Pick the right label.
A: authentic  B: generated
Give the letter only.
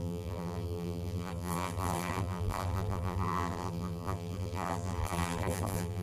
B